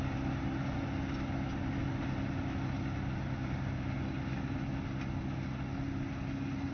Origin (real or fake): real